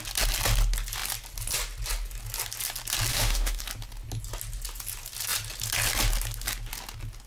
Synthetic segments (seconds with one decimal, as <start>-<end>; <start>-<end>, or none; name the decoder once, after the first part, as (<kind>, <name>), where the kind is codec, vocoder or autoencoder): 3.1-3.6 (autoencoder, DAC-VAE)